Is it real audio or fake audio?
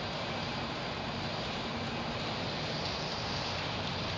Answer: real